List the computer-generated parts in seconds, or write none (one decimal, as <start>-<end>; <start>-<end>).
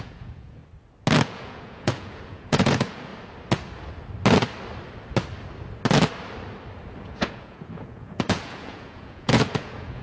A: 0.0-0.6; 1.2-3.1; 7.0-10.0